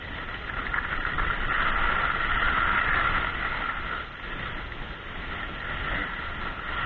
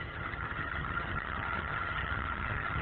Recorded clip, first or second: first